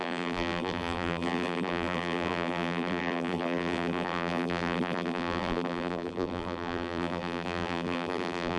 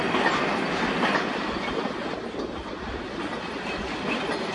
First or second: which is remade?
first